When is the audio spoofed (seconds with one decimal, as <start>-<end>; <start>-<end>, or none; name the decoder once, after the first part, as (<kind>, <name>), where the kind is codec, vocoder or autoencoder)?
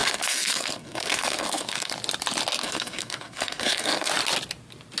0.0-1.9 (codec, SNAC); 2.6-4.1